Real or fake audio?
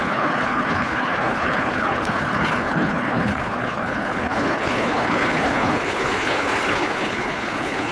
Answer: fake